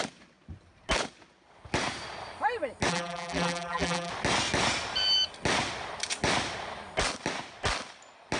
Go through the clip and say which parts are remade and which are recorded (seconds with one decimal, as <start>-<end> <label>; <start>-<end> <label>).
0.0-2.9 recorded; 2.9-4.1 remade; 4.1-8.4 recorded